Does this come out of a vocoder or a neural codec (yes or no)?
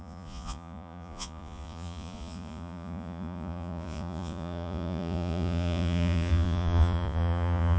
yes